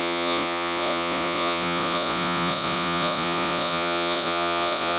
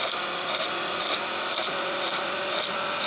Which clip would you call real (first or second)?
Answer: second